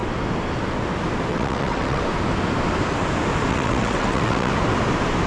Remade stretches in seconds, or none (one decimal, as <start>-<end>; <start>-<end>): 1.3-2.0; 3.5-4.5